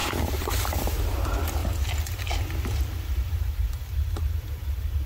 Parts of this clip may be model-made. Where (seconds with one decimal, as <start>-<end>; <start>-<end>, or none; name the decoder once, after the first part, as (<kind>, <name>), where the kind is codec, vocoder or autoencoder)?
0.0-1.6 (vocoder, BigVGAN v2); 2.4-5.1